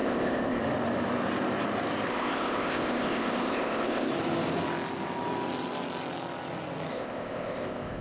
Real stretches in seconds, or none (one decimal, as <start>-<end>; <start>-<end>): 0.6-2.1; 4.1-6.9